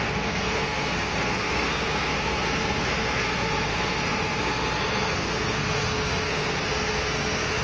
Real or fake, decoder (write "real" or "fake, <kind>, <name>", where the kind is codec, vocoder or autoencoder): fake, codec, SNAC